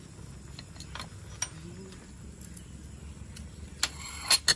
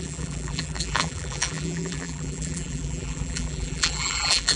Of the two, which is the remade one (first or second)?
second